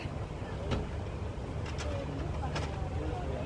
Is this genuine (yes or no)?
yes